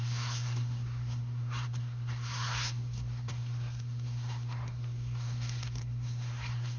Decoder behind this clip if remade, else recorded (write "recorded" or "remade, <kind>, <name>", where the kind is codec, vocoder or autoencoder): remade, codec, SNAC